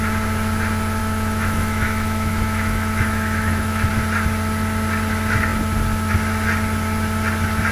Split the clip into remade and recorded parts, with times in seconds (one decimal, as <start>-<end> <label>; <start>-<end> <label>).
0.0-1.0 recorded; 1.0-3.9 remade; 3.9-7.7 recorded